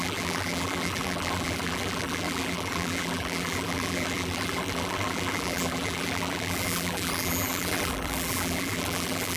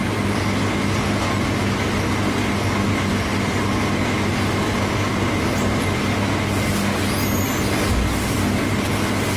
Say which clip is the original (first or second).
second